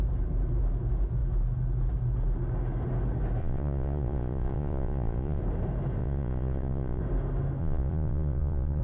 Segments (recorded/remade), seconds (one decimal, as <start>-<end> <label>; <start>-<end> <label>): 0.0-3.4 recorded; 3.4-5.4 remade; 5.4-6.0 recorded; 6.0-7.0 remade; 7.0-7.6 recorded; 7.6-8.8 remade

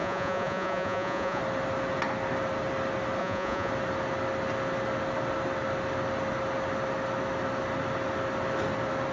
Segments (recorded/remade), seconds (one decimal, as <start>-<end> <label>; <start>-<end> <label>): 0.0-1.4 remade; 1.4-3.2 recorded; 3.2-3.7 remade; 3.7-9.1 recorded